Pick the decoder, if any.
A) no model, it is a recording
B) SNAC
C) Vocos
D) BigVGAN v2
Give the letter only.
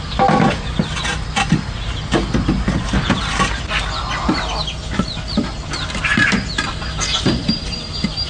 A